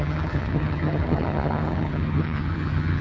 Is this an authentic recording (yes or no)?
no